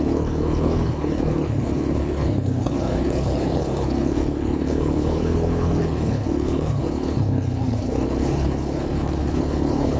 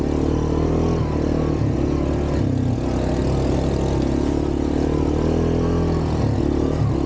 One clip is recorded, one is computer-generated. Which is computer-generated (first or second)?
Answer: first